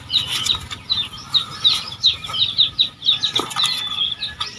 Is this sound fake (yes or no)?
no